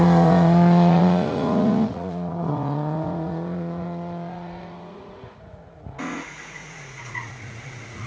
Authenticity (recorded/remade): remade